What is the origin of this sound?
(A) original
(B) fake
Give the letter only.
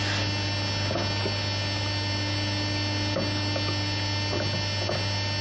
A